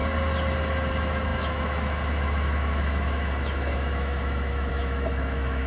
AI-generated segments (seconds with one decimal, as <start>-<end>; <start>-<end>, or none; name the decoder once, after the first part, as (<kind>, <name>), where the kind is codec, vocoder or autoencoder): 0.9-5.7 (autoencoder, DAC-VAE)